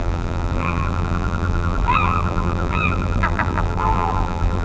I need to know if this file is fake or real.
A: fake